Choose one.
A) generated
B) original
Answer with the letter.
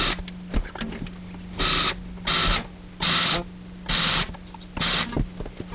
B